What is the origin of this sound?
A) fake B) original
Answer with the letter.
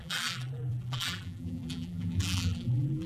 A